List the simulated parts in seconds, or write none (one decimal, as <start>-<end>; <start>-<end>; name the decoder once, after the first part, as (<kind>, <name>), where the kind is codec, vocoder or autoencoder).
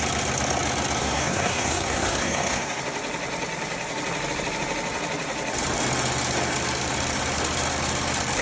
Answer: 1.0-2.8 (codec, SNAC)